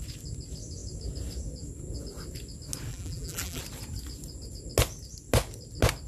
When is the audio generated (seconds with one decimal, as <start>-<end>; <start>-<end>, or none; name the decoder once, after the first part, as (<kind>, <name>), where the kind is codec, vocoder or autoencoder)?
2.9-3.6 (vocoder, BigVGAN v2)